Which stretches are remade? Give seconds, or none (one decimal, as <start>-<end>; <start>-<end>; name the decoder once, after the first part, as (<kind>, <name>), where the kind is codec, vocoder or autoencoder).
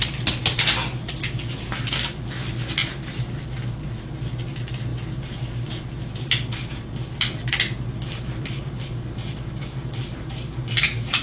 2.8-3.3 (vocoder, BigVGAN v2)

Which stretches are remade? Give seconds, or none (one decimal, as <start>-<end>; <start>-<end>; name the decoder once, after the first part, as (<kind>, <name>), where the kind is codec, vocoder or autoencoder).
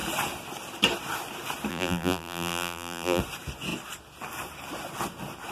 1.7-3.2 (vocoder, BigVGAN v2)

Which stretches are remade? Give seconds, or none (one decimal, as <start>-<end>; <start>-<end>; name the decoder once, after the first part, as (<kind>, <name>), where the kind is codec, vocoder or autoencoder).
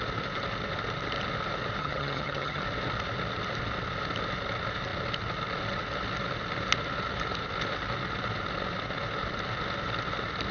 1.8-2.6 (vocoder, HiFi-GAN)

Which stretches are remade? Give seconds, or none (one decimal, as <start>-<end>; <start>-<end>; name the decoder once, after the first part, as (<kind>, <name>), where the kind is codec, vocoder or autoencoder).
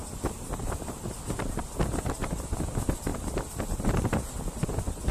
0.0-1.6 (vocoder, BigVGAN v2)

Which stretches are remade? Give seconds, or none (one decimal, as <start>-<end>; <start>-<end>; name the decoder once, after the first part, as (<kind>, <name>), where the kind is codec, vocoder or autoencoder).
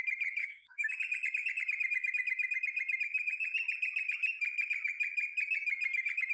0.4-0.9 (autoencoder, DAC-VAE)